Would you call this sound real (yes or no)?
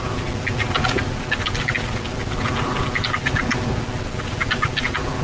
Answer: yes